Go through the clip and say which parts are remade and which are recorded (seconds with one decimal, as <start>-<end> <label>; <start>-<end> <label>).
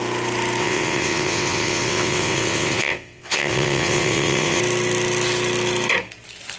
0.0-0.6 recorded; 0.6-4.6 remade; 4.6-6.6 recorded